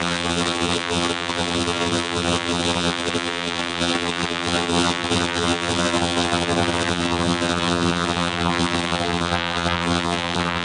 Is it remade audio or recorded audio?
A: remade